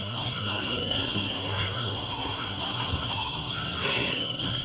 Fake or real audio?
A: fake